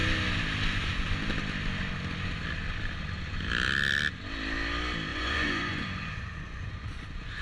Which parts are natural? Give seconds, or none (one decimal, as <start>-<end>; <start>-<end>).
0.0-5.1